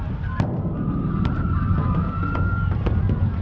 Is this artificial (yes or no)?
yes